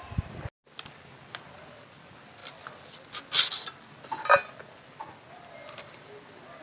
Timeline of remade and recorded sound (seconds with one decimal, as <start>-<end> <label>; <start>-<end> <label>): 0.0-6.6 recorded